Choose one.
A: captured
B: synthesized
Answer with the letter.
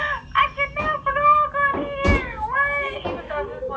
A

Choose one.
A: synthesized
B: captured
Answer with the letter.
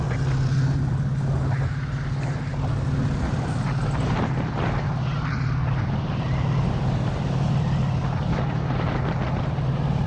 B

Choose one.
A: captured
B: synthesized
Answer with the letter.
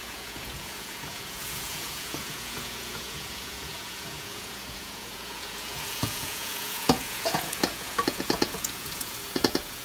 B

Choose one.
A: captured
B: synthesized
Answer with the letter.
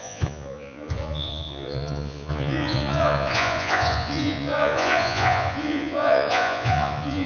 B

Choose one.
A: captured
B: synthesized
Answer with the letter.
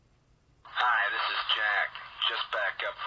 A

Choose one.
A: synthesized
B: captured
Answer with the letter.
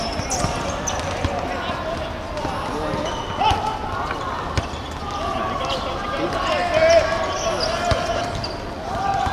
B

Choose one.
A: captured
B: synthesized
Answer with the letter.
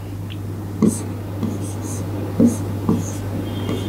A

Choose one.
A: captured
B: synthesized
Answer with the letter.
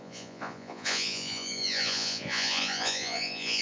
B